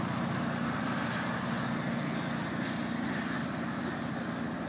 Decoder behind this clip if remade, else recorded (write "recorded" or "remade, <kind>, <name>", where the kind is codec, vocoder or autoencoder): recorded